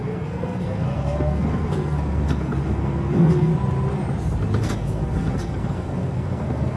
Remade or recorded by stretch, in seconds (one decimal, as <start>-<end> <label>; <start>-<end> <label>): 0.0-3.5 remade; 3.5-4.6 recorded; 4.6-6.8 remade